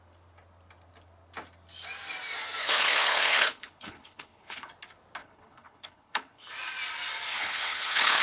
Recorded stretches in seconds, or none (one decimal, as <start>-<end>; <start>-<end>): 0.0-2.6; 4.7-5.2; 6.5-7.3